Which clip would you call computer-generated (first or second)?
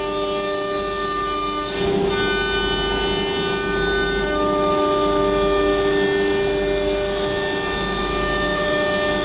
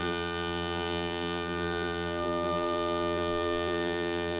second